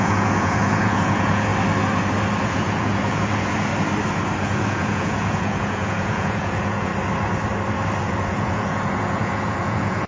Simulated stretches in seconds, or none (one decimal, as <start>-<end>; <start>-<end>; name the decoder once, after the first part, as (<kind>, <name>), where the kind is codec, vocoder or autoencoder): 0.0-1.5 (vocoder, Vocos); 2.5-3.7; 4.4-6.9; 8.0-10.1